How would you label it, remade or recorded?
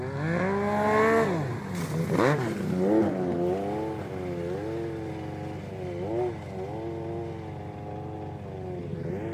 recorded